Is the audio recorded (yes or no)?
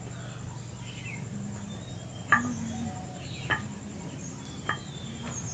yes